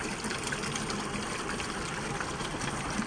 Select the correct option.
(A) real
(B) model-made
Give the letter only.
A